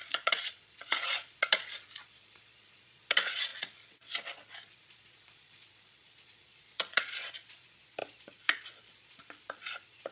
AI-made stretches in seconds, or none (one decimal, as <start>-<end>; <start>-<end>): 0.0-10.1